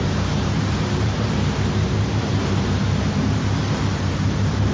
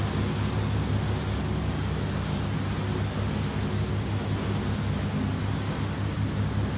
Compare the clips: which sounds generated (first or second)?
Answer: first